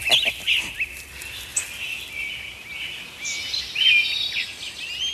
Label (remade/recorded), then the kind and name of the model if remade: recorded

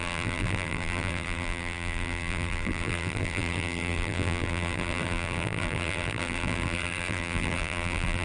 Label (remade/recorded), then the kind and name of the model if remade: remade, vocoder, BigVGAN v2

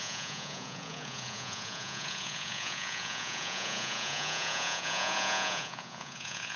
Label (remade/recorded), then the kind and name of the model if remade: remade, vocoder, Vocos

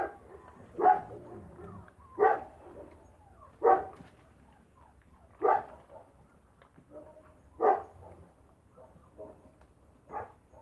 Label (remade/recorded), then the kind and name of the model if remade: recorded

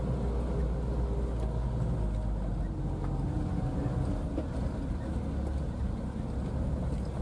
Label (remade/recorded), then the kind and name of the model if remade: recorded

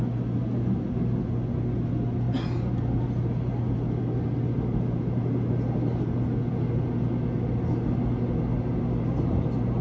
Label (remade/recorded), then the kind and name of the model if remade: recorded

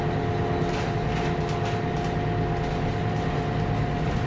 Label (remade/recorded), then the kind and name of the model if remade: recorded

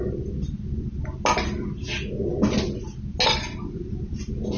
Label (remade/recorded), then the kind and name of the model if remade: recorded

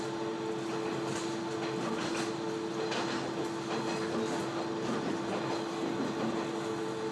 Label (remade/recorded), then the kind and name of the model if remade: recorded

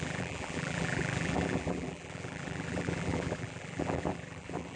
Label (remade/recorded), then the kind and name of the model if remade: remade, vocoder, BigVGAN v2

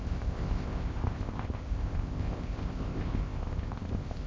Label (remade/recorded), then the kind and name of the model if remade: remade, codec, ZipCodec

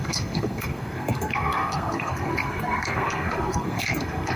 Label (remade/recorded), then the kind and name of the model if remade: remade, codec, SNAC